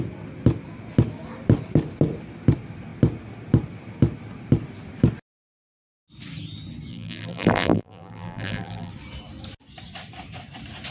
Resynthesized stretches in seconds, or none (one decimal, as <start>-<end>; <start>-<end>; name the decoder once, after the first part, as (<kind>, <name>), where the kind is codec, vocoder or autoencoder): 6.9-8.9 (vocoder, BigVGAN v2)